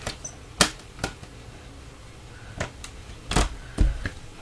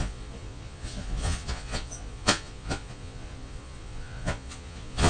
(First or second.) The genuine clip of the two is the first